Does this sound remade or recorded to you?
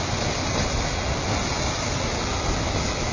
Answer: recorded